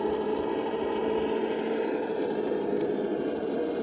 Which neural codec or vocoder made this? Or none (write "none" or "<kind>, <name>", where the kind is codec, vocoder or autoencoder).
none